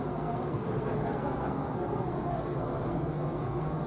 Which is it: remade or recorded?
remade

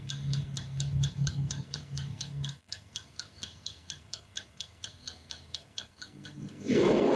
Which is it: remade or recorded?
remade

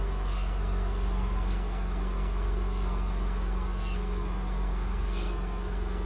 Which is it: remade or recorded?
remade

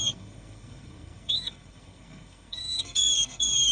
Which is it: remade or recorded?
remade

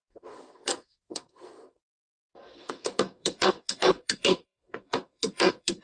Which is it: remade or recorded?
remade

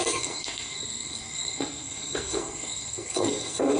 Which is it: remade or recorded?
remade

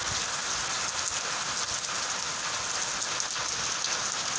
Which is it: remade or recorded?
recorded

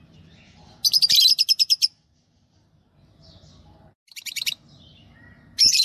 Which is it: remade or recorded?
recorded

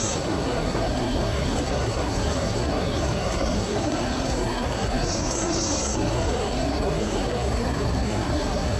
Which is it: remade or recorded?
remade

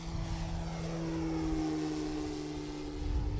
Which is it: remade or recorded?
recorded